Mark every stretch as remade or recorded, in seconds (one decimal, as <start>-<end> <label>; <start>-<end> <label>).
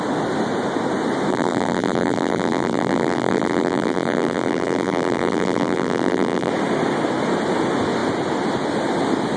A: 0.0-1.3 recorded; 1.3-6.5 remade; 6.5-9.4 recorded